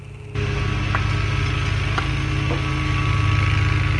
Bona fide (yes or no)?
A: yes